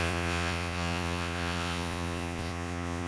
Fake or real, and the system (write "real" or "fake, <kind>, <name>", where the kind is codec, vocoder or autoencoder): fake, vocoder, Vocos